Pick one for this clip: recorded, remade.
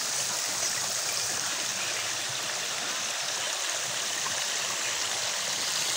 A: recorded